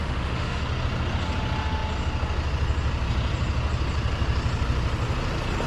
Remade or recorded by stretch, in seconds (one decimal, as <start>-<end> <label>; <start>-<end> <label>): 0.0-0.6 remade; 0.6-5.7 recorded